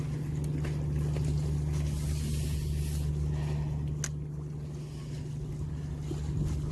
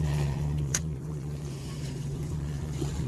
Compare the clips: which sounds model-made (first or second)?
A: second